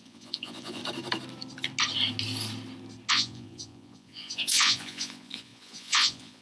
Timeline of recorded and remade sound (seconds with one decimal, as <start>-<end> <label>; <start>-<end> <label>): 0.0-0.8 remade; 0.8-3.1 recorded; 3.1-6.4 remade